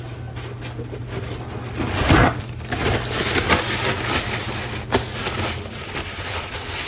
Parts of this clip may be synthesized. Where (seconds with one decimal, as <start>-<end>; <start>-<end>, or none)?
none